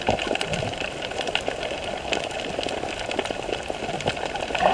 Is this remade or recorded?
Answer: recorded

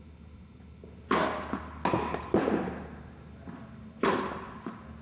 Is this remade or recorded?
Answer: recorded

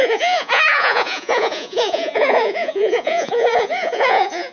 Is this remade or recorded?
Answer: remade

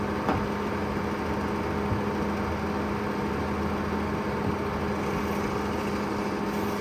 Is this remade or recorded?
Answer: recorded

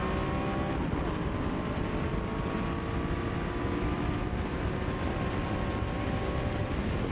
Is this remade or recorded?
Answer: recorded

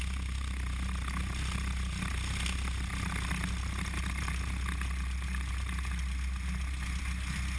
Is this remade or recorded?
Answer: recorded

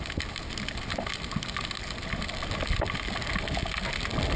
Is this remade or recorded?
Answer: recorded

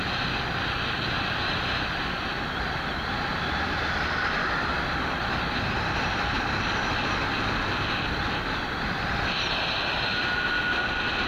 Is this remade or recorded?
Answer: recorded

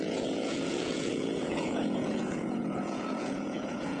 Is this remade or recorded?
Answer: remade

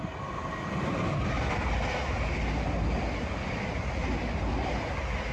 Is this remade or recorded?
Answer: recorded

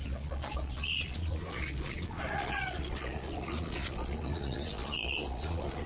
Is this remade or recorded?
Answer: remade